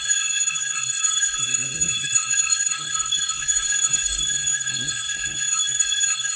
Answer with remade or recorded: remade